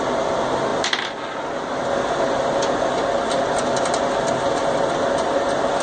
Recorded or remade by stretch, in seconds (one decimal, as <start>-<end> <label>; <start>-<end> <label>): 0.0-5.8 recorded